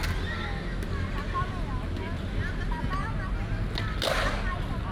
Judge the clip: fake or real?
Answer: real